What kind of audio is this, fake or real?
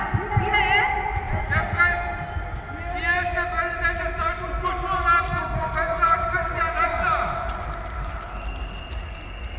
real